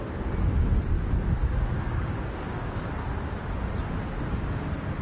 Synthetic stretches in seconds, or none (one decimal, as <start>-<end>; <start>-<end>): 1.4-2.9